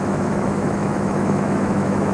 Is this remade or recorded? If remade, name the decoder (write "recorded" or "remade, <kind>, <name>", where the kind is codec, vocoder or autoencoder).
remade, autoencoder, DAC-VAE